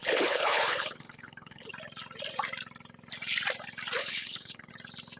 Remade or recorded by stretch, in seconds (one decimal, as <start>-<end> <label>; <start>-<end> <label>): 0.0-1.7 remade; 1.7-4.0 recorded; 4.0-4.7 remade; 4.7-5.2 recorded